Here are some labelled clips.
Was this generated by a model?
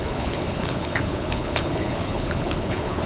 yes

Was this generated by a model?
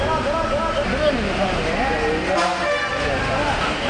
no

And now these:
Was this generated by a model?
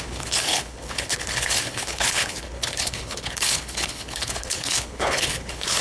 yes